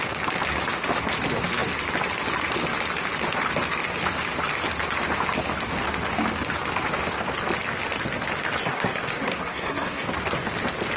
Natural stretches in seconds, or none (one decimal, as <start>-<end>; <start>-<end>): 0.0-8.6; 10.0-11.0